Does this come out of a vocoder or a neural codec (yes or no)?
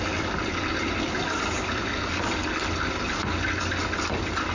no